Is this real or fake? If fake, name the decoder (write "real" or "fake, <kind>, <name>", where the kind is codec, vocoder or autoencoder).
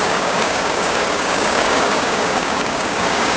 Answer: fake, codec, DAC